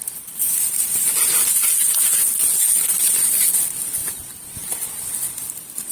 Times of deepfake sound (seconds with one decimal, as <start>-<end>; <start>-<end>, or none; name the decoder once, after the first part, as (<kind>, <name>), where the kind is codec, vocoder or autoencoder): 0.0-1.5 (vocoder, BigVGAN v2); 2.6-5.9